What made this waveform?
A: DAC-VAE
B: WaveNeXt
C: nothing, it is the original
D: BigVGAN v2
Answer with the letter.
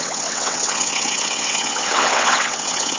B